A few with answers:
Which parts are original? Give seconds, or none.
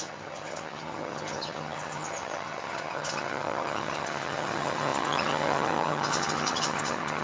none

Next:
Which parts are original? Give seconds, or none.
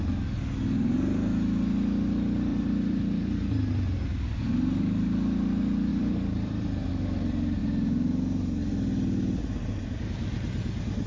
0.0-2.5; 3.4-5.9; 6.9-11.1